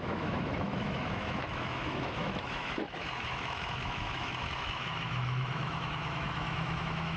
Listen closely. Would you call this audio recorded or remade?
remade